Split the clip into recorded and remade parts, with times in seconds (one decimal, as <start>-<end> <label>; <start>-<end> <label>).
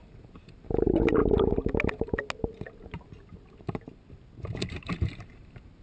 0.0-1.2 remade; 1.2-4.7 recorded; 4.7-5.8 remade